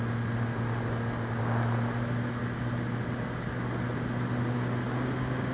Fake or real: real